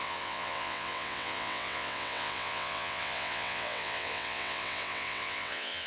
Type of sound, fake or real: fake